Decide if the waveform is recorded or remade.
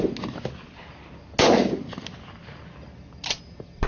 recorded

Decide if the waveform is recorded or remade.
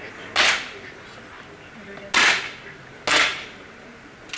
recorded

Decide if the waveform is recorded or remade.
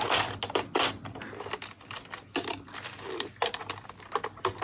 recorded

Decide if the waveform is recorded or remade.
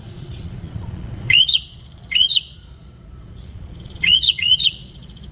remade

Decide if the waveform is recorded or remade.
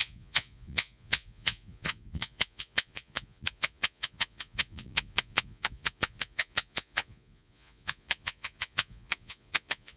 remade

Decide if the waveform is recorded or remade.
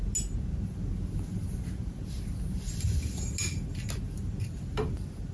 recorded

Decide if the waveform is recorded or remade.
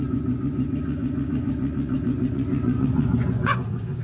remade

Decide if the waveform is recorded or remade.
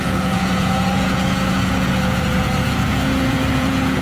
remade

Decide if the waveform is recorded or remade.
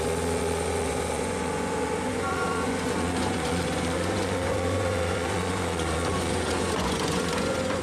remade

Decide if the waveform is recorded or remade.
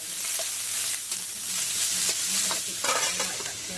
recorded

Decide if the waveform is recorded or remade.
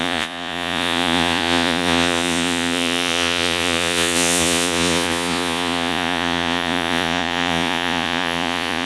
remade